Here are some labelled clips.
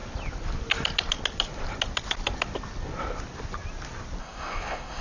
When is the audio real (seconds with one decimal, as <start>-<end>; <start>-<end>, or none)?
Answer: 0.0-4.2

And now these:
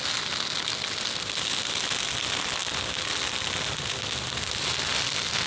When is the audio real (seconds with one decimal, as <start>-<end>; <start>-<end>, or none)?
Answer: 0.0-5.5

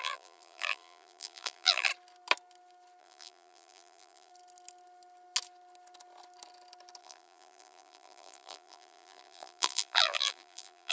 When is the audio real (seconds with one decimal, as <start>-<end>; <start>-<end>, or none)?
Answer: 1.9-3.0; 4.3-7.0